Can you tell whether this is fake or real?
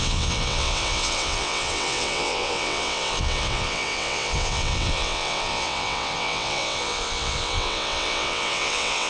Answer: fake